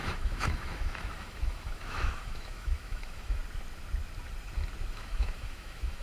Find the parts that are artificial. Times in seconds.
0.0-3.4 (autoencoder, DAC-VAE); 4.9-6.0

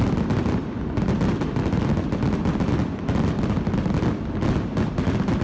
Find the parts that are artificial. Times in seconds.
none

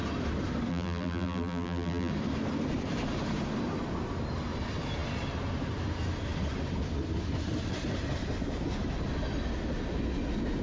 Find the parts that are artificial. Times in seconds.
0.7-2.1 (vocoder, BigVGAN v2)

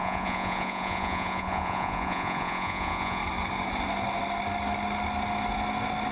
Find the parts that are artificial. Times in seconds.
0.0-3.2 (vocoder, Vocos)

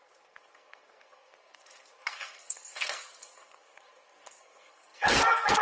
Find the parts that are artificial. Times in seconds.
0.0-5.6 (codec, SNAC)

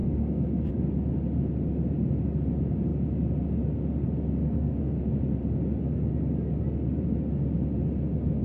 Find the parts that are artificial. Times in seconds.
0.0-0.7 (codec, SNAC); 4.4-5.0

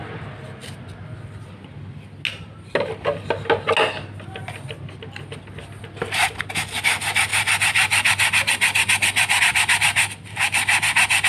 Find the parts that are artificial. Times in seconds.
none

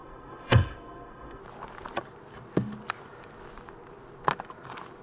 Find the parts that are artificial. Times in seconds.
0.0-1.4 (codec, SNAC)